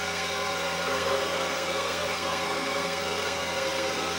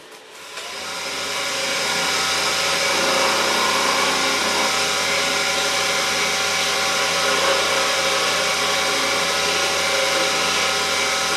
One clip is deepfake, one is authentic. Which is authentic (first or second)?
second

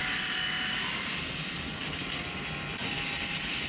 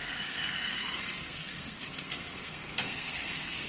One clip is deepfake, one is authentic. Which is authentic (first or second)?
first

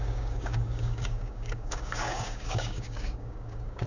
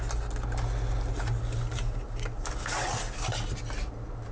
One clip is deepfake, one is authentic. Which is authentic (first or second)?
second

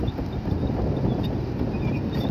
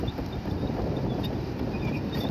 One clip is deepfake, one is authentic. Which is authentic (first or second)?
first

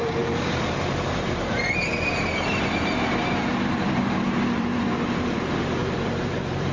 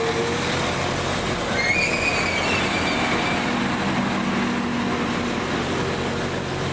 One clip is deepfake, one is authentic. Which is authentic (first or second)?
second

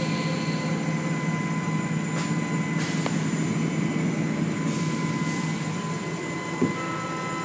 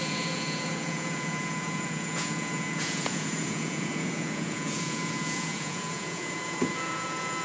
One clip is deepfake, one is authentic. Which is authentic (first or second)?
first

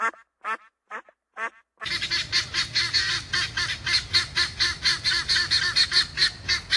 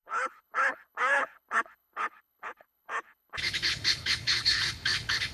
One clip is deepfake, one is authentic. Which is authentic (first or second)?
first